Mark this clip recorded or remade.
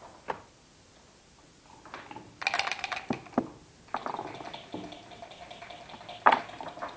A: recorded